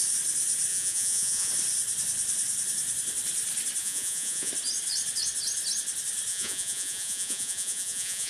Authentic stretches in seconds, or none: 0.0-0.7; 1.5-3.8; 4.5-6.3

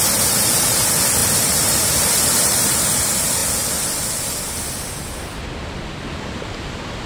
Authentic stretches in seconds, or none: 3.4-7.1

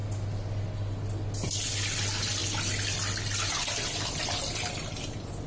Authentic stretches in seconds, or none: 0.0-5.5